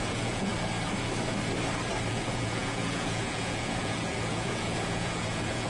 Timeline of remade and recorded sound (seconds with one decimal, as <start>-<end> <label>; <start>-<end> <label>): 0.0-0.5 remade; 0.5-2.1 recorded; 2.1-5.7 remade